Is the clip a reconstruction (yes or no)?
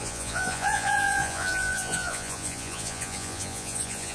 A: yes